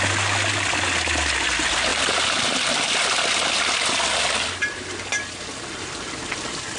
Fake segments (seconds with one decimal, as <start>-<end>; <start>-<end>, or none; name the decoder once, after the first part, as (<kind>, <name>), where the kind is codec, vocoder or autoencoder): none